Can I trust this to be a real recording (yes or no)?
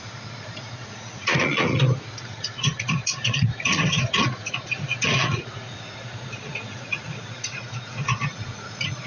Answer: no